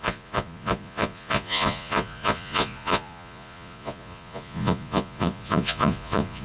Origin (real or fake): fake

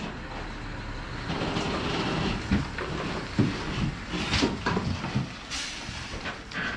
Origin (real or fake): real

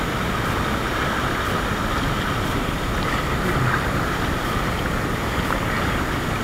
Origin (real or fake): real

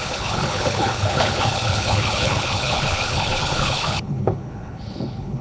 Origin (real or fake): fake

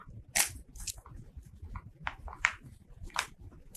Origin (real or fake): real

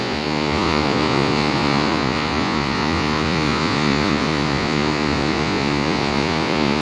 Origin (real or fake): fake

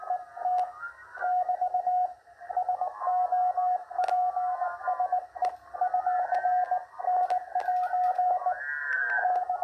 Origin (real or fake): real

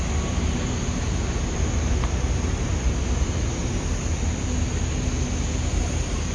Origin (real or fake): real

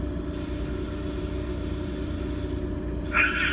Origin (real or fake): real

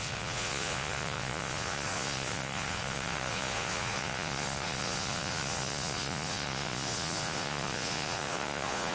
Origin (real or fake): fake